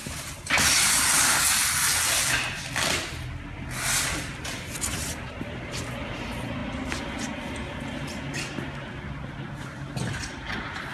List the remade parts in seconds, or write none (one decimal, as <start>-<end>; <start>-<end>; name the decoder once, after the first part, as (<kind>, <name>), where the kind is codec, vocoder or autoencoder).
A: none